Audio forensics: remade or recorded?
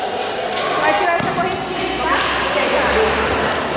recorded